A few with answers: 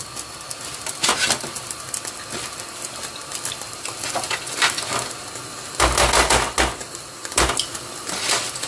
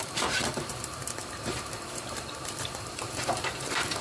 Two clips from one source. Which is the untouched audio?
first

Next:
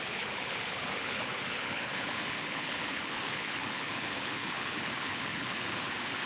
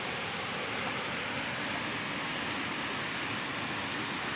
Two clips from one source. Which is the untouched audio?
second